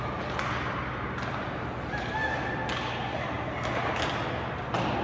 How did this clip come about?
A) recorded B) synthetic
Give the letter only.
A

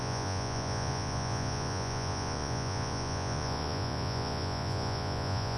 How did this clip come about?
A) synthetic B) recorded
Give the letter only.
A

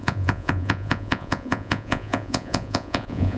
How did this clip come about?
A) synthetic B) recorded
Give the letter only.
A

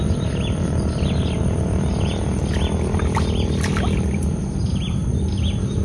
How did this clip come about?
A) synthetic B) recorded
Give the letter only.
B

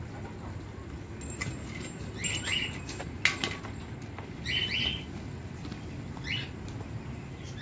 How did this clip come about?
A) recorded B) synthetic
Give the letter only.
A